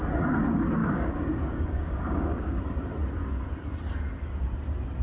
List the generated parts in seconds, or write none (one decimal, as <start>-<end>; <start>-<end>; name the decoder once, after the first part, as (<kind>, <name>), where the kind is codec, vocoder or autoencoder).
0.8-2.6 (codec, DAC)